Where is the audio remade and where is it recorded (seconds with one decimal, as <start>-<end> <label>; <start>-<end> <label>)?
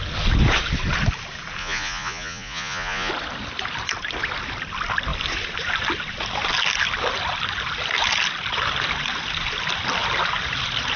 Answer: 0.0-1.6 recorded; 1.6-3.1 remade; 3.1-11.0 recorded